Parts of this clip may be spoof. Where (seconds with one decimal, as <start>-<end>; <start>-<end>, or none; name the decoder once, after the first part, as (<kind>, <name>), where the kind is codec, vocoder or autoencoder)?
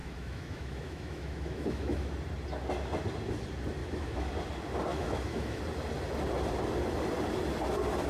0.0-2.1 (autoencoder, DAC-VAE); 3.8-4.3; 4.9-5.6